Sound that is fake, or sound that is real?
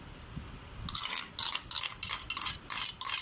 real